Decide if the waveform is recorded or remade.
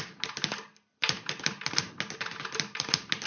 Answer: recorded